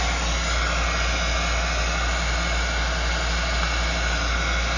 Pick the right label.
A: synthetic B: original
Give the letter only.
B